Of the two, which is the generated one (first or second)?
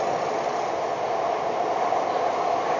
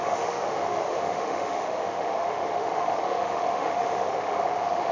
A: second